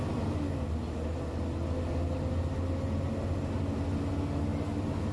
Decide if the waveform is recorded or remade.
recorded